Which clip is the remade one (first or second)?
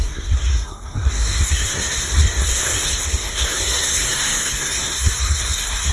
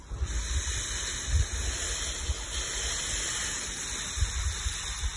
first